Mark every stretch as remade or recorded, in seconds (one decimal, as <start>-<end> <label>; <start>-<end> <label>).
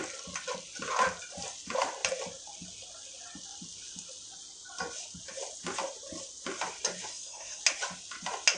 0.0-7.1 recorded; 7.1-7.6 remade; 7.6-8.6 recorded